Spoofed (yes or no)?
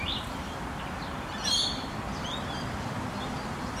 yes